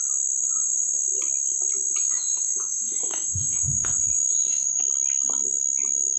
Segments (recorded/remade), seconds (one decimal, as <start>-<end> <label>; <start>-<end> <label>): 0.0-0.4 recorded; 0.4-1.0 remade; 1.0-2.0 recorded; 2.0-4.8 remade; 4.8-6.2 recorded

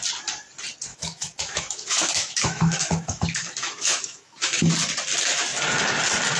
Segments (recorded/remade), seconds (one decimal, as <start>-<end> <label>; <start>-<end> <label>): 0.0-0.9 recorded; 0.9-4.7 remade; 4.7-6.4 recorded